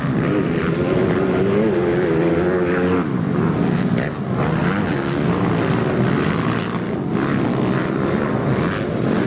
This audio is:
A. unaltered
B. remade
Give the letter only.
A